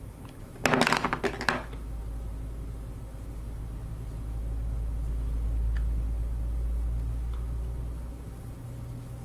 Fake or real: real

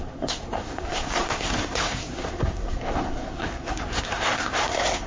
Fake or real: fake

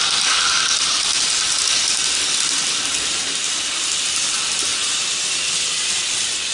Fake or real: real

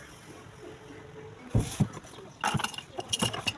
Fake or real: real